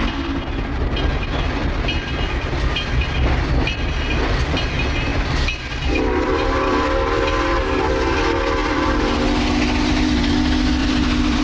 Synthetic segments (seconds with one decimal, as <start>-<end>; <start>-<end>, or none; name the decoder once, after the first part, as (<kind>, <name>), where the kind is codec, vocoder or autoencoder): 1.1-4.6 (vocoder, BigVGAN v2); 5.1-7.2; 8.6-9.4; 10.8-11.4